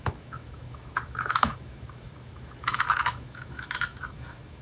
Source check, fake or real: fake